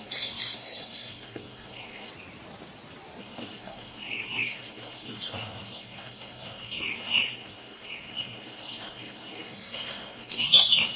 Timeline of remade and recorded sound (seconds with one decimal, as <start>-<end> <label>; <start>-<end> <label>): 0.0-2.1 remade; 2.1-3.2 recorded; 3.2-11.0 remade

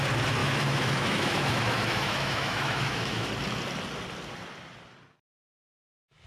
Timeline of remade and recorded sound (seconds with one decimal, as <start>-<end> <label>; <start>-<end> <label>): 0.0-0.4 recorded; 0.4-3.3 remade; 3.3-6.3 recorded